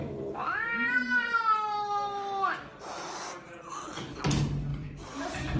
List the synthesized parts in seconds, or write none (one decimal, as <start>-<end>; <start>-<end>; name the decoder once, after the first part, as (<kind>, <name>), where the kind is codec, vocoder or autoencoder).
4.7-5.6 (vocoder, BigVGAN v2)